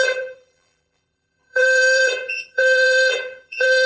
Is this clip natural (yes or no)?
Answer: no